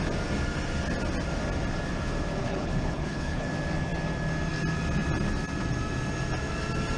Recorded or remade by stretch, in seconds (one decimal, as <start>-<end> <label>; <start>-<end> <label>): 0.0-2.4 recorded; 2.4-3.5 remade; 3.5-7.0 recorded